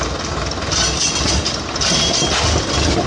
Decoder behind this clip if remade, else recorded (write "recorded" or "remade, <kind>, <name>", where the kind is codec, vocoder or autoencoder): recorded